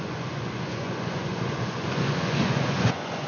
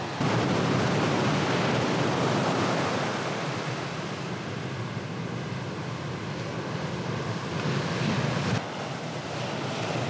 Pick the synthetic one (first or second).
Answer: first